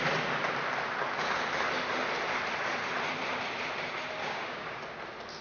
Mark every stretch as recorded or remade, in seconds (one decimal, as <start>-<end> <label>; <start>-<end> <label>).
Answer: 0.0-4.2 recorded; 4.2-4.8 remade; 4.8-5.4 recorded